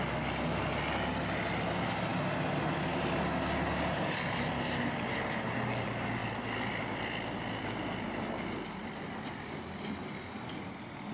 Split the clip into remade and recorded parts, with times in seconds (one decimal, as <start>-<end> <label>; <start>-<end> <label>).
0.0-11.1 recorded